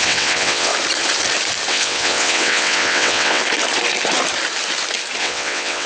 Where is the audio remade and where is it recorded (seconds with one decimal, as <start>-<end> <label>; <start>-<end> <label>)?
0.0-0.7 remade; 0.7-1.7 recorded; 1.7-3.4 remade; 3.4-5.2 recorded; 5.2-5.9 remade